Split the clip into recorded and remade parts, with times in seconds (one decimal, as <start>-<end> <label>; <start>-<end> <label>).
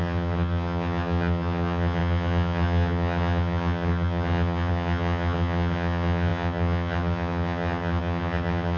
0.0-8.8 remade